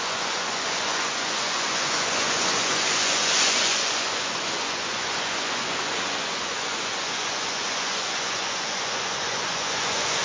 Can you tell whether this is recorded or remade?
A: remade